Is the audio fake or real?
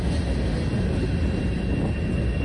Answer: real